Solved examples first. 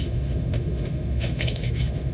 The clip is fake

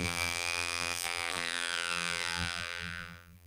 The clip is fake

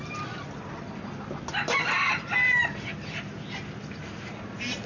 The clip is real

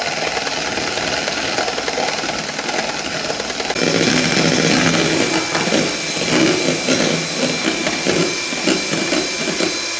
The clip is real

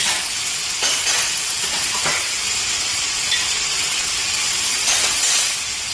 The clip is fake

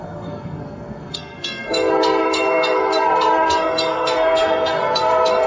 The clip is fake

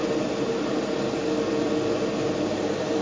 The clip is real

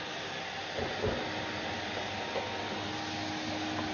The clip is real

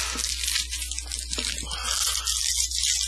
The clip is real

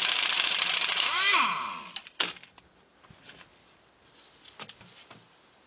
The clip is real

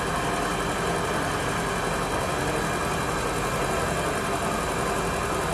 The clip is real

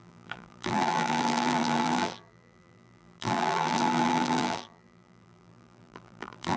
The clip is fake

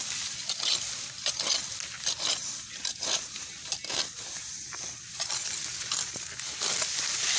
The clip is real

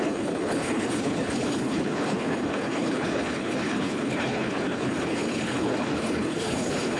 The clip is fake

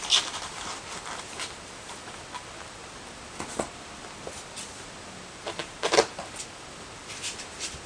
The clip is fake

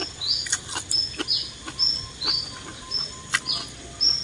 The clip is real